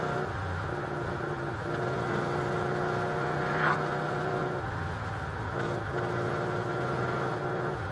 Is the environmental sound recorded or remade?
recorded